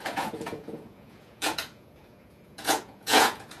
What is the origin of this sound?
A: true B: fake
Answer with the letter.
B